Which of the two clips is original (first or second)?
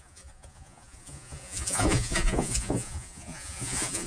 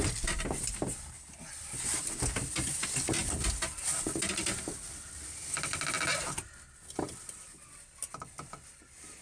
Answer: second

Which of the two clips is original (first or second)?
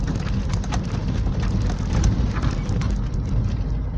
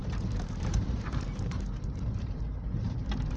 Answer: first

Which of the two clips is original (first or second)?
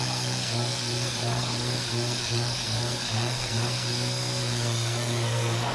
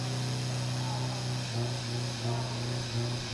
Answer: second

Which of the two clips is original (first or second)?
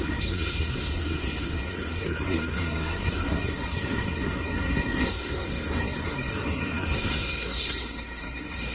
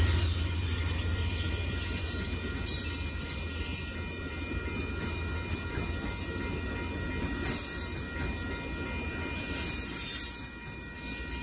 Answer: second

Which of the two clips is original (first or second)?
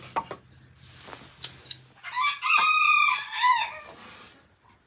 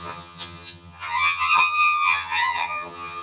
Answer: first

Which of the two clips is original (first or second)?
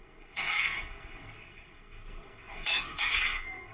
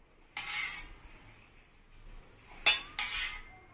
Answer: second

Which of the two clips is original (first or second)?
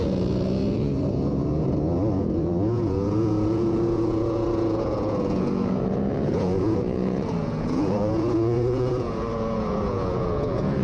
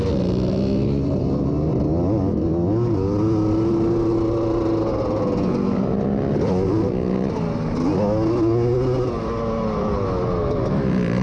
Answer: second